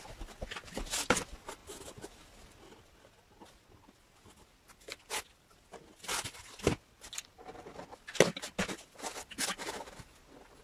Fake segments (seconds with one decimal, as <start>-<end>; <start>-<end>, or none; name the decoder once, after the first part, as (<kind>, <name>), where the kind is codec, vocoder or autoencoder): none